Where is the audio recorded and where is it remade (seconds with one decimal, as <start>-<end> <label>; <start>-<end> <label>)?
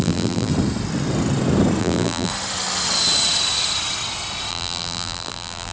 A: 0.0-0.5 remade; 0.5-1.8 recorded; 1.8-2.3 remade; 2.3-4.5 recorded; 4.5-5.7 remade